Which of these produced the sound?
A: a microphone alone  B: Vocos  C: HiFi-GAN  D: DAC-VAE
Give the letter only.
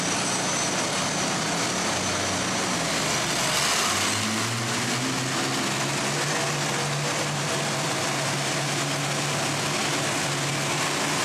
A